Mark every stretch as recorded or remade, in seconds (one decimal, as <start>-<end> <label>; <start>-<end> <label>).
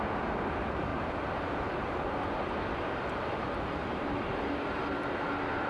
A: 0.0-5.7 recorded